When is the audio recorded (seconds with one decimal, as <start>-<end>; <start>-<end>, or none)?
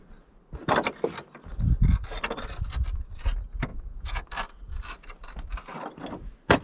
0.0-3.7; 4.2-6.6